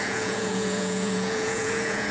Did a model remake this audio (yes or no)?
yes